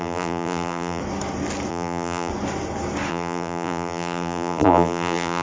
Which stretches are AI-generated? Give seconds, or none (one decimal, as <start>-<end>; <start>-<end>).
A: 0.0-1.0; 1.7-2.3; 3.1-5.4